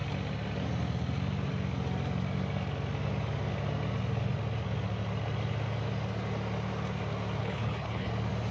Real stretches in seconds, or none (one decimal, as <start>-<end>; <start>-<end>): 0.0-7.4; 8.1-8.5